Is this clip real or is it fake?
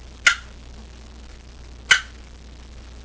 real